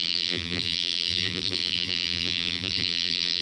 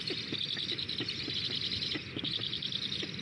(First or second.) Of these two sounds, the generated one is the first